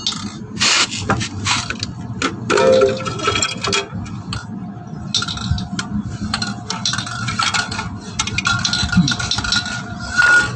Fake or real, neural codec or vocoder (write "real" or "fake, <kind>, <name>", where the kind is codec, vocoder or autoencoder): real